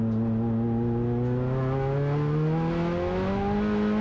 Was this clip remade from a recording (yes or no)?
no